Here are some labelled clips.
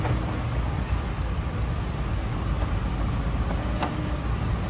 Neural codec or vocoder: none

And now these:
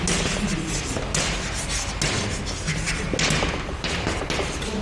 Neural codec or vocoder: none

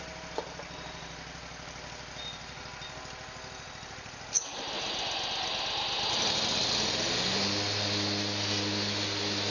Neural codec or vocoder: none